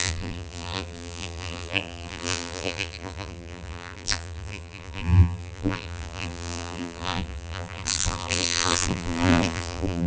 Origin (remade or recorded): remade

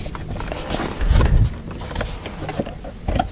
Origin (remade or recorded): recorded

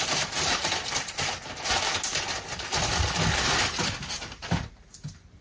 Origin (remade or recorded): remade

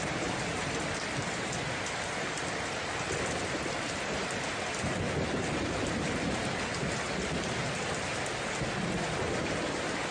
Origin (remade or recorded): recorded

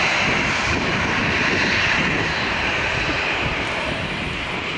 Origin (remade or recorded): remade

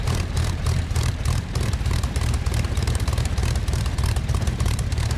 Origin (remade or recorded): remade